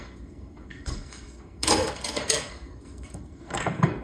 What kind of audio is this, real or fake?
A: fake